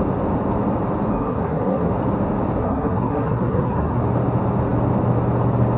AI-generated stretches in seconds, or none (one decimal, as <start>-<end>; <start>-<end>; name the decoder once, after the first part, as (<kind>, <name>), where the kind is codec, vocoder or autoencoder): 1.1-1.9 (codec, SNAC); 2.6-4.0